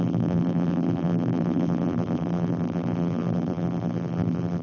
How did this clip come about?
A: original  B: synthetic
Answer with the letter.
B